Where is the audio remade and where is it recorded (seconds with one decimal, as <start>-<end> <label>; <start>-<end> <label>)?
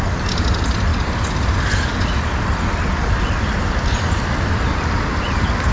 0.0-5.7 recorded